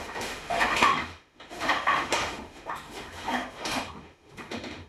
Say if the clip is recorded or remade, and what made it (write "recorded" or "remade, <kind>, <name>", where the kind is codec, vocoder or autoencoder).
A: remade, autoencoder, DAC-VAE